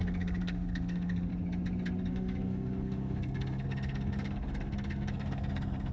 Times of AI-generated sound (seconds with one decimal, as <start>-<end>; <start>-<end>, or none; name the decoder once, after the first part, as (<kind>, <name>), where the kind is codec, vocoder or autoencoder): 0.0-1.3 (codec, SNAC); 2.1-5.9